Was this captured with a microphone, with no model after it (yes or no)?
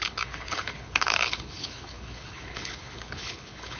no